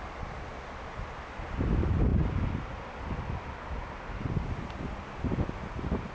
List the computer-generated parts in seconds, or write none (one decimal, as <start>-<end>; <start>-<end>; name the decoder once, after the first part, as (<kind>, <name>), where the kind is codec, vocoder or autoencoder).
2.1-2.9 (vocoder, BigVGAN v2)